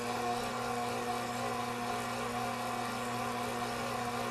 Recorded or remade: recorded